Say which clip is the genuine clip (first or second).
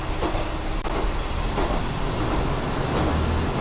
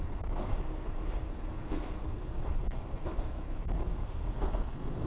first